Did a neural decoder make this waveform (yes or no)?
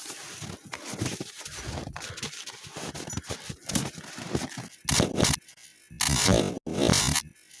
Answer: no